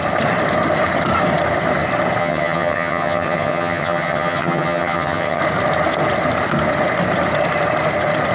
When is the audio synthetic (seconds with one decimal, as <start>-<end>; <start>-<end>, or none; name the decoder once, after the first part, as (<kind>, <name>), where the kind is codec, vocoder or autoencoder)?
2.2-5.4 (vocoder, HiFi-GAN)